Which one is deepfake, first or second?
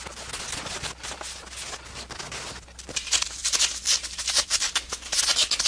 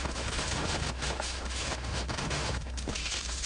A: second